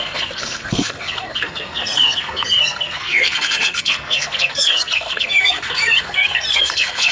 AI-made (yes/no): yes